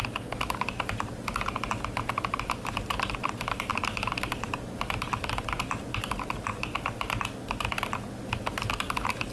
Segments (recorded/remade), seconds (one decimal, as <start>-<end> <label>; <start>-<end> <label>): 0.0-9.3 recorded